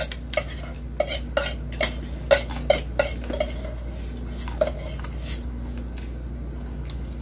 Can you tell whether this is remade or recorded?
recorded